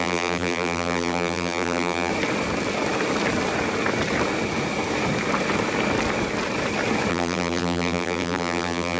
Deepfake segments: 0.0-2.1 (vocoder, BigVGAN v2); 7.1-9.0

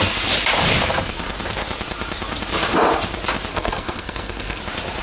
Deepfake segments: 3.5-4.6 (codec, SNAC)

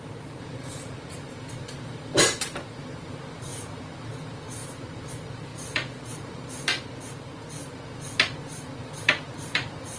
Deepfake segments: 0.0-6.7 (vocoder, BigVGAN v2); 8.8-10.0

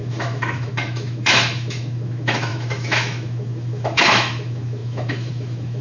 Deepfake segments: 0.0-5.8 (autoencoder, DAC-VAE)

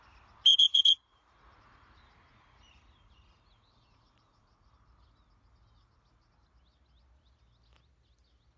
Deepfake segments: 0.5-4.7 (vocoder, Vocos)